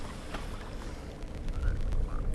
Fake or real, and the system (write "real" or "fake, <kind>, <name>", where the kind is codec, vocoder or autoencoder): real